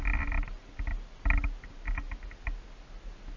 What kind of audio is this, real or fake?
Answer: real